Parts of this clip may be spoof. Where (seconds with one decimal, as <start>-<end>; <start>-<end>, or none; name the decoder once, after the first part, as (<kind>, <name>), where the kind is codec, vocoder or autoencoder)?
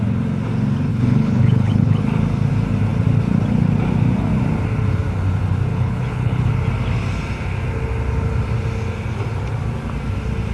0.9-2.0 (codec, HILCodec); 5.7-6.5